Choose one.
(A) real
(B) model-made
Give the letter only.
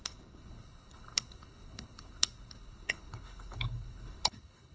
B